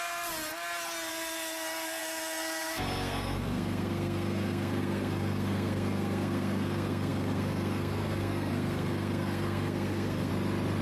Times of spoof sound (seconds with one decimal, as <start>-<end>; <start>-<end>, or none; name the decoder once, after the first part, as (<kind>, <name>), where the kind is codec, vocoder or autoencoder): 0.0-0.5 (codec, SNAC); 1.1-10.3